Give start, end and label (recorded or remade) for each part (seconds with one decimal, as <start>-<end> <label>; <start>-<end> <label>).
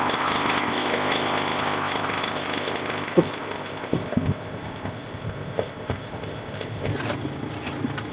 0.0-6.9 remade; 6.9-8.1 recorded